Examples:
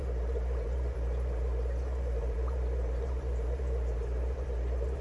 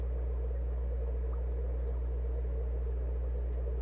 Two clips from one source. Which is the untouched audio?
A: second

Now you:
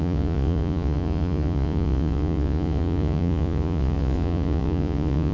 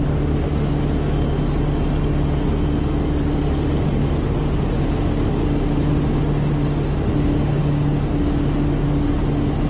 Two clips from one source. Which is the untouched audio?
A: second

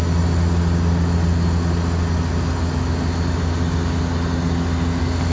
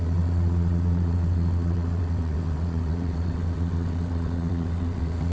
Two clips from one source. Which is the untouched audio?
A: first